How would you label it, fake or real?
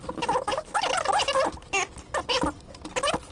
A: real